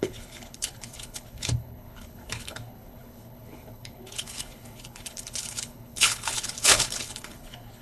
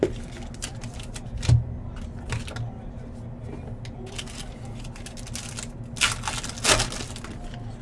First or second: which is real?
second